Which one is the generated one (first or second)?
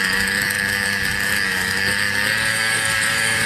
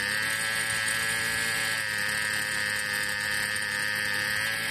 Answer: first